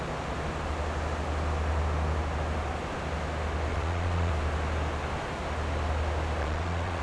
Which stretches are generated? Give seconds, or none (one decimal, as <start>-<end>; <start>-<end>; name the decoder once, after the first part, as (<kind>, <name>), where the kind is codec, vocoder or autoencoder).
3.7-4.3 (vocoder, Vocos); 6.4-7.0

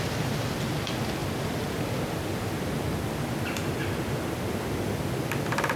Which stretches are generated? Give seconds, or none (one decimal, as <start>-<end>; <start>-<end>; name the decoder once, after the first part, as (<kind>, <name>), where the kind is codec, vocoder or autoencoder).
none

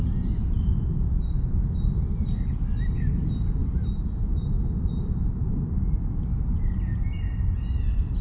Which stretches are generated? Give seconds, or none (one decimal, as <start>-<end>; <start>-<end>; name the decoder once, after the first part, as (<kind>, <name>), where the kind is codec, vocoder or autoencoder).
3.6-4.5 (vocoder, BigVGAN v2)

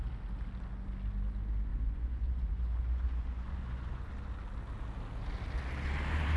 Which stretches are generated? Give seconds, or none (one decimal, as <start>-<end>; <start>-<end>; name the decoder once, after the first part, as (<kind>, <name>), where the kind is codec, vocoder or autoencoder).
1.7-4.1 (vocoder, Vocos)

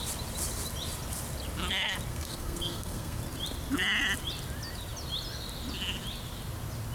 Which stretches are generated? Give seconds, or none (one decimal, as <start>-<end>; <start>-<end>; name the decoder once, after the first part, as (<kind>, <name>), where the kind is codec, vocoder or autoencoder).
2.1-3.2 (codec, SNAC)